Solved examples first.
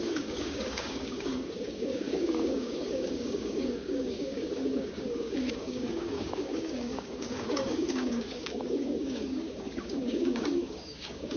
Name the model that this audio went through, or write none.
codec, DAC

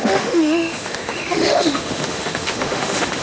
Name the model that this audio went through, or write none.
autoencoder, DAC-VAE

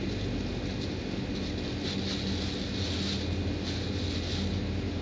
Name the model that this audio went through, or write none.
none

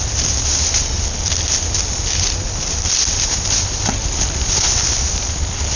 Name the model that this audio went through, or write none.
none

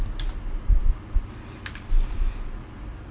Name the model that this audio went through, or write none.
none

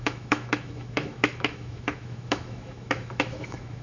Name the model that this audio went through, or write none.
autoencoder, DAC-VAE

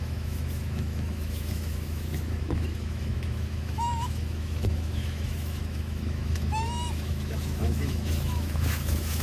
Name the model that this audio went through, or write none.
autoencoder, DAC-VAE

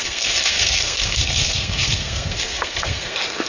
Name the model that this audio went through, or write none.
codec, SNAC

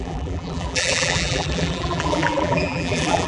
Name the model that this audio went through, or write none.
vocoder, BigVGAN v2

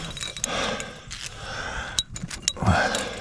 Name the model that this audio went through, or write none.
none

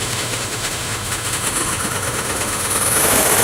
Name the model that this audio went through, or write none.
autoencoder, DAC-VAE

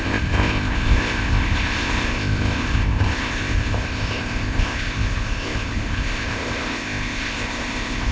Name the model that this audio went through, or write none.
codec, ZipCodec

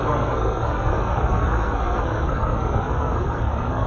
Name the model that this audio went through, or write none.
codec, SNAC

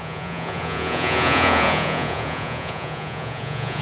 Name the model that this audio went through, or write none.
vocoder, Vocos